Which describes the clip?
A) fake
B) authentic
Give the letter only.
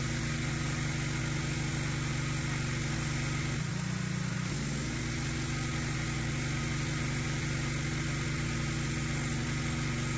B